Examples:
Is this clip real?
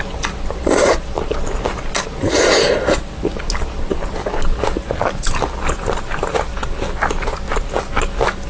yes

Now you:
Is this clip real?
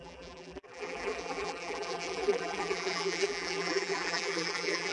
no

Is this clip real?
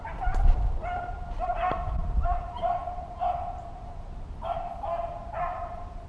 no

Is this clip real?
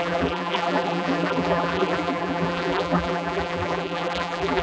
no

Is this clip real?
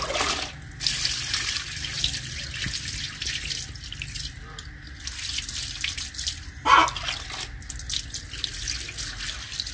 yes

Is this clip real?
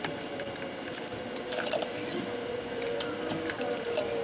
no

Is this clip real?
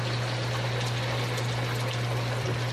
yes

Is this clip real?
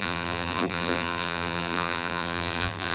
no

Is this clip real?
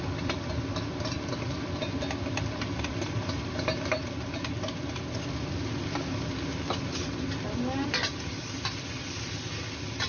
no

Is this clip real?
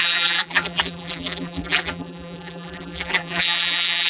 no